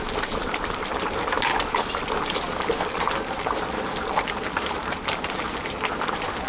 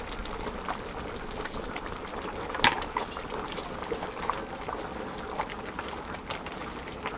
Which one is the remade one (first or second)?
first